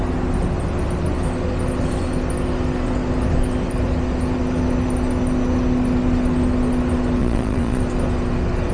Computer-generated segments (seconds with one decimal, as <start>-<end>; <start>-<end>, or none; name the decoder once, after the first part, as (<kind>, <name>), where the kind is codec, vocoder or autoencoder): 7.2-7.8 (vocoder, Vocos)